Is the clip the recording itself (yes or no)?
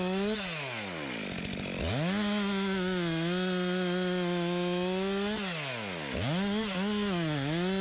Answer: yes